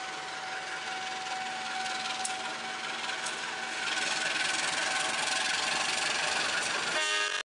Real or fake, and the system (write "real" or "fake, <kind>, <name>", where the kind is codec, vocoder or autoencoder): real